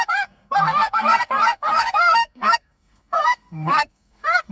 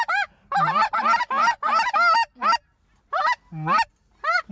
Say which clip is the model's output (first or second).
first